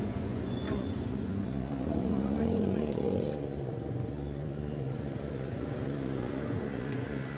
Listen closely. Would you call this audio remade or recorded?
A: remade